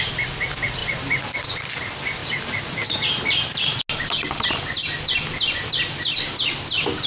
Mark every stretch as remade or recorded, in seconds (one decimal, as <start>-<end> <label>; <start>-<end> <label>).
0.0-2.2 recorded; 2.2-3.8 remade; 3.8-7.1 recorded